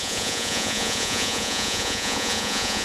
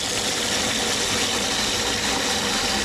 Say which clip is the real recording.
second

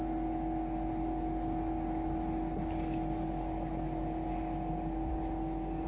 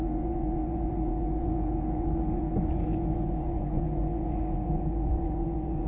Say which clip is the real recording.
first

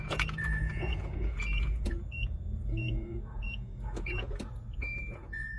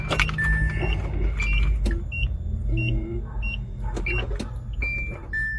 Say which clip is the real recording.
second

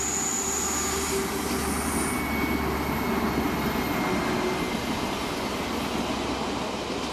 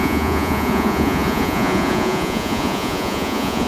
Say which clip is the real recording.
first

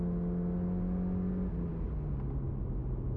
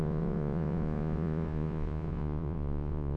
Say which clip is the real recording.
first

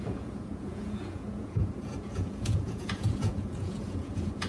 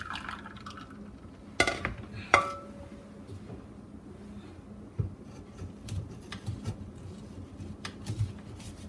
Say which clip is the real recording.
second